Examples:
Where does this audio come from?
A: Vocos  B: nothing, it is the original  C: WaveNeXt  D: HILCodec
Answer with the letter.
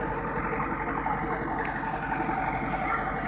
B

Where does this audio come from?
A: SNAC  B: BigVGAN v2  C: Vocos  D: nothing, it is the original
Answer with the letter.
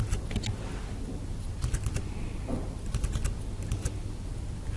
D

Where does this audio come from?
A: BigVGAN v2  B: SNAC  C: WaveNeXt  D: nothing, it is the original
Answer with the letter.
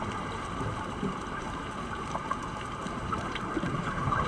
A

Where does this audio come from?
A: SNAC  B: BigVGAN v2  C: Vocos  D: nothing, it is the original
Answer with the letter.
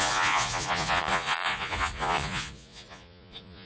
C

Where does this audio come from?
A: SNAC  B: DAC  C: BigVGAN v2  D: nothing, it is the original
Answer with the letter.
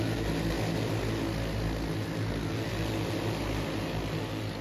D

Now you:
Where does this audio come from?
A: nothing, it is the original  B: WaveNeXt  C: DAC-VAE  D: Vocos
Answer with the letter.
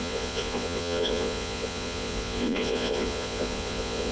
D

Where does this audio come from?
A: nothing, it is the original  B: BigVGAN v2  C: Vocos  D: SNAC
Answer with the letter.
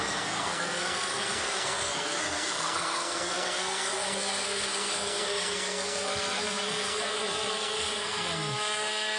D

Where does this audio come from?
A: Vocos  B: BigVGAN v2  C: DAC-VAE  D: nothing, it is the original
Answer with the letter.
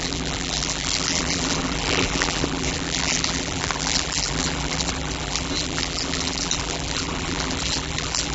B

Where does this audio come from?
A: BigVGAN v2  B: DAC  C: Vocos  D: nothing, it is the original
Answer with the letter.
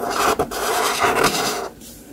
A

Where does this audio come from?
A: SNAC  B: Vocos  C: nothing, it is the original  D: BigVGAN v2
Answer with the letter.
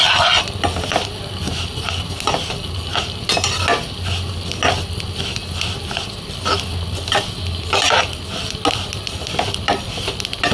C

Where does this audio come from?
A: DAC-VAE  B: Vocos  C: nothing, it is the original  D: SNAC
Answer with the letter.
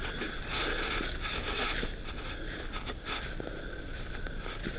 C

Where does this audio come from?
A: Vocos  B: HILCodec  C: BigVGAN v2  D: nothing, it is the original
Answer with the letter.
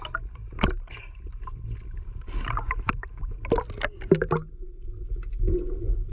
D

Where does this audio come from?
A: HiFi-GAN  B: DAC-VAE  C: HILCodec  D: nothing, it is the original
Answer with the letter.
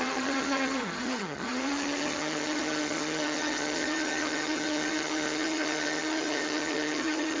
A